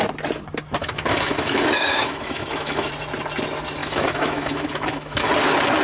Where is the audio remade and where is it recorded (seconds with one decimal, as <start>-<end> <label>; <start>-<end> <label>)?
0.0-0.8 recorded; 0.8-2.9 remade; 2.9-3.8 recorded; 3.8-5.3 remade; 5.3-5.8 recorded